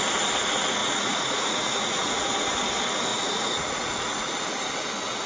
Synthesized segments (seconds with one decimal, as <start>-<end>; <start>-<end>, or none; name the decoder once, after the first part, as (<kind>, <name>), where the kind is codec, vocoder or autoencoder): 0.8-2.5 (vocoder, Vocos); 3.1-4.3